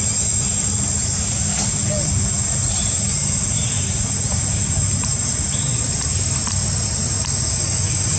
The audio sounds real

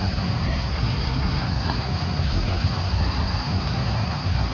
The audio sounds fake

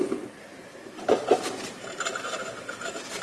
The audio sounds real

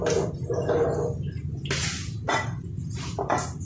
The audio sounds real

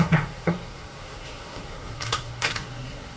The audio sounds fake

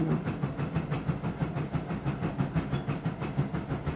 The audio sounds real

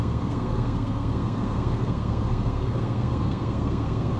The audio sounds fake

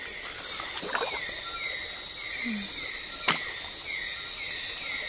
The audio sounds real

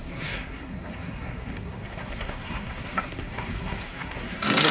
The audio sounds fake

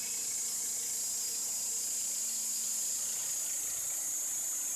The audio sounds real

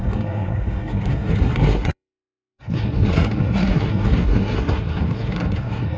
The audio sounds fake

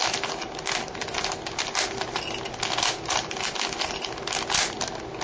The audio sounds real